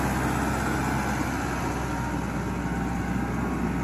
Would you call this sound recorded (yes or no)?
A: yes